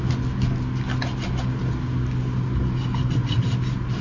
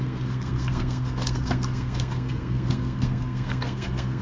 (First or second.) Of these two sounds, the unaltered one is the first